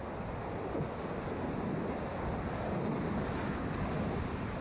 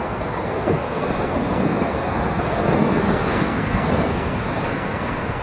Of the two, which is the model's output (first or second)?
second